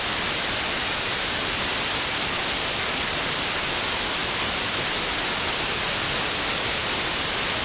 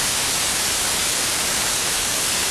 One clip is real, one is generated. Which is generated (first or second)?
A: second